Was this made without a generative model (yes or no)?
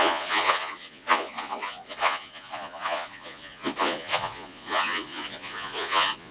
no